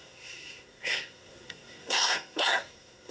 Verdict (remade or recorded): remade